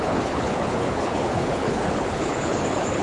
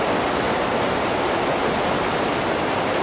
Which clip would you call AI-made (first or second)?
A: first